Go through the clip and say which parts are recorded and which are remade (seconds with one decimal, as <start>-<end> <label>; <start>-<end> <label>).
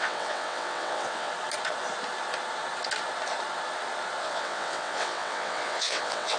0.0-1.3 remade; 1.3-4.2 recorded; 4.2-6.4 remade